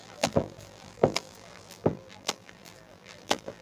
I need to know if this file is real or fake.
fake